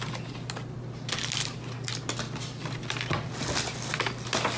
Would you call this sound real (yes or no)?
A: yes